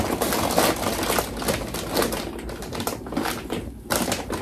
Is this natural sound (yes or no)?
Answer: yes